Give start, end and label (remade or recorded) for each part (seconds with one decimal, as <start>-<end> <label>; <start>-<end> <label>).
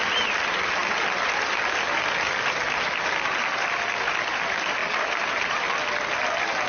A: 0.0-6.7 recorded